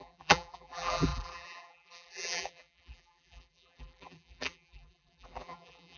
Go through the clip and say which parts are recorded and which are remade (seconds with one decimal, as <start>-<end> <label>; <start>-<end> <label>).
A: 0.0-6.0 remade